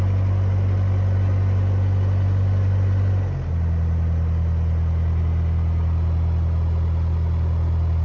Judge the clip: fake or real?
real